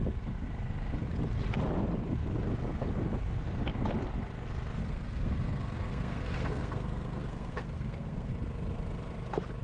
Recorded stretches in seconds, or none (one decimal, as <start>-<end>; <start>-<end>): 0.0-4.8; 8.3-9.6